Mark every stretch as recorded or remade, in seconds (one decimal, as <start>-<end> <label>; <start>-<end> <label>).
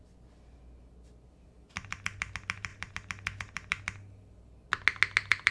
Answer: 0.0-5.5 recorded